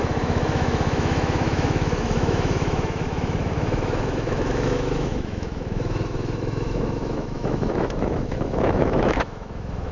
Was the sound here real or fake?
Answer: fake